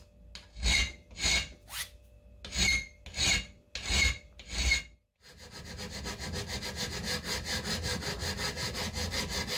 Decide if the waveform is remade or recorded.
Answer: recorded